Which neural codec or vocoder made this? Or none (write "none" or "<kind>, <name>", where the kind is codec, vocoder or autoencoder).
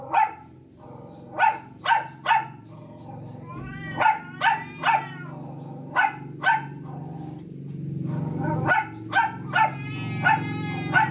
none